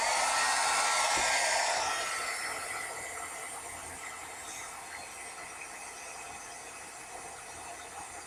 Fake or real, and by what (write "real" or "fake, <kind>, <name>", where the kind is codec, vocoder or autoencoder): real